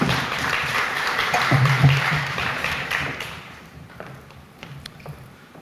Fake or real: fake